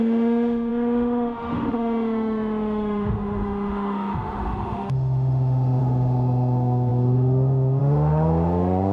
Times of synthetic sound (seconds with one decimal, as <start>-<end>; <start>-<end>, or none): 0.0-8.9